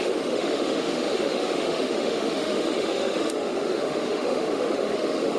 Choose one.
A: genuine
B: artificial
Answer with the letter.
B